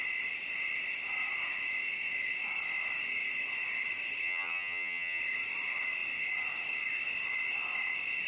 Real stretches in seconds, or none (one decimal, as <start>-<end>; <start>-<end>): 0.0-4.2; 5.2-8.3